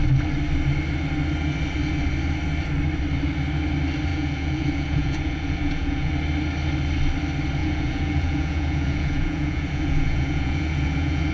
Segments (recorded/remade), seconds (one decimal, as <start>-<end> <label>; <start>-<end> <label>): 0.0-4.1 recorded; 4.1-6.1 remade; 6.1-7.6 recorded; 7.6-11.3 remade